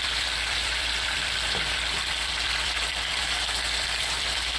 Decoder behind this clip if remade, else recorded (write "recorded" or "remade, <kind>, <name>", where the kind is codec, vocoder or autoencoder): remade, vocoder, BigVGAN v2